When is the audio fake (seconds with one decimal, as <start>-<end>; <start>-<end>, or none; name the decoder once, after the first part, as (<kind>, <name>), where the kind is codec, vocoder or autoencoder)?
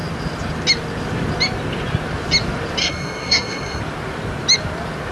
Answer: 2.8-3.8 (codec, SNAC)